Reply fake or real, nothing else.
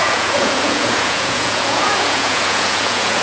fake